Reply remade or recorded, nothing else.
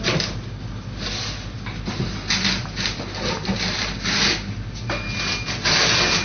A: recorded